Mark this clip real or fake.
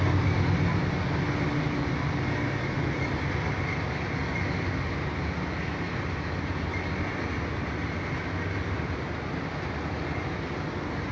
real